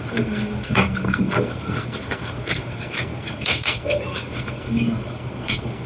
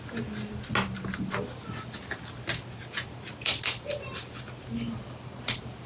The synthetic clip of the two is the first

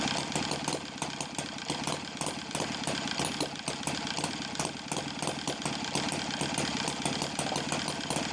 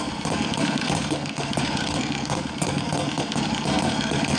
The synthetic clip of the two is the second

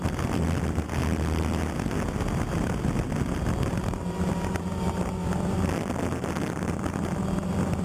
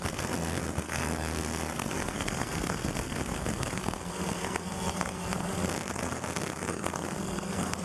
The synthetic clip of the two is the second